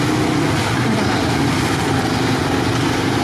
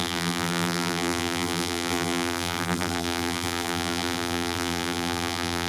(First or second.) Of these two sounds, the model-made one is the second